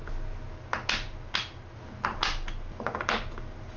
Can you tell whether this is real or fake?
real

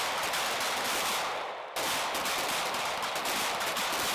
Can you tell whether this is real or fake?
real